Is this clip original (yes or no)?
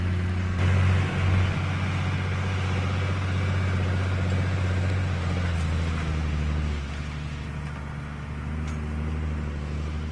yes